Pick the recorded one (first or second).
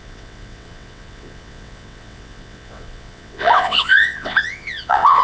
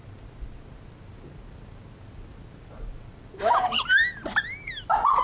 second